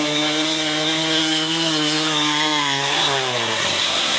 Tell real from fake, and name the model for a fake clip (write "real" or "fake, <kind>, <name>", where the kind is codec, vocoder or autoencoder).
fake, codec, SNAC